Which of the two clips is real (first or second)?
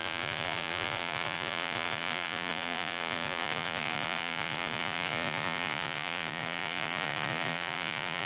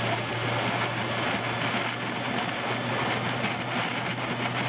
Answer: second